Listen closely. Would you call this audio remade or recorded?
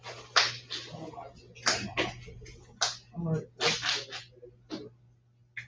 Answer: recorded